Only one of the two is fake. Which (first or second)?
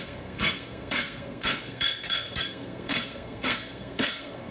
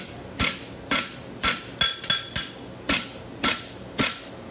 first